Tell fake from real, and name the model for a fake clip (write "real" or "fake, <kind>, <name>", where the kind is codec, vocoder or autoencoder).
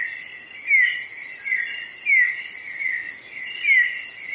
real